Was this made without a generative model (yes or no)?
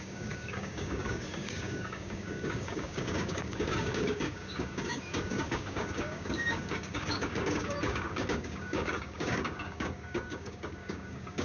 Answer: no